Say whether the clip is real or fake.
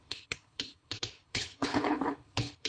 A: fake